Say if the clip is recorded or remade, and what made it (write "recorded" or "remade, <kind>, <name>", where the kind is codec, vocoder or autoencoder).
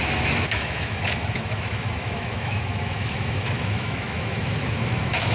remade, autoencoder, DAC-VAE